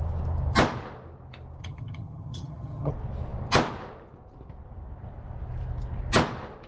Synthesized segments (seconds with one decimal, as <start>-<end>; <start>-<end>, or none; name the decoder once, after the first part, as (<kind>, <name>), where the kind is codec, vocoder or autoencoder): 1.6-2.9 (vocoder, HiFi-GAN)